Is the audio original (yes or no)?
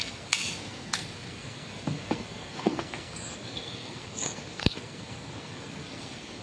no